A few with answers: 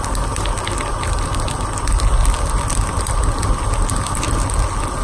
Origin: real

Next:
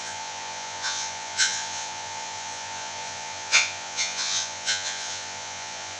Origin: fake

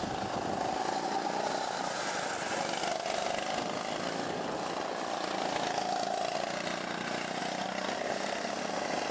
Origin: real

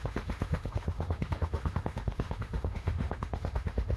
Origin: fake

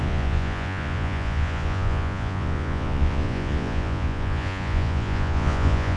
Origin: fake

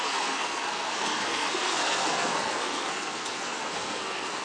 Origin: fake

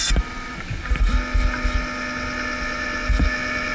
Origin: real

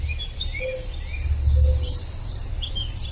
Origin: real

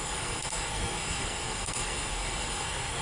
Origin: fake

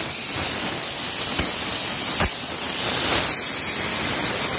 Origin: real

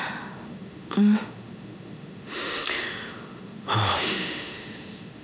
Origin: fake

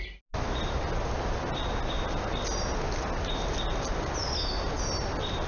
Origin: real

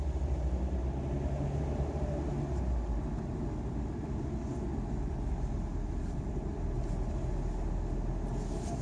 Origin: real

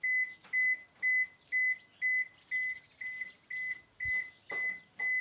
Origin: real